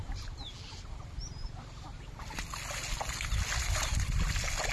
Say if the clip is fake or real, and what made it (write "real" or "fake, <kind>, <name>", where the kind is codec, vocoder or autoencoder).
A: real